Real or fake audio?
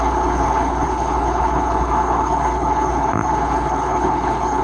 fake